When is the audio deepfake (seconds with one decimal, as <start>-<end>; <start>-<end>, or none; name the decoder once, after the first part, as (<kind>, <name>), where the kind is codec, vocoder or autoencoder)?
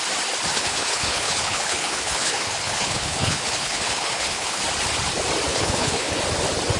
0.5-4.6 (codec, HILCodec); 5.5-6.2